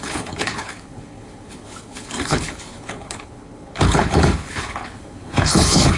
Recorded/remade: remade